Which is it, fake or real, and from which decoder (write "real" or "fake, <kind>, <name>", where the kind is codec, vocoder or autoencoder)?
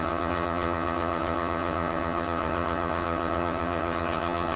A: fake, vocoder, HiFi-GAN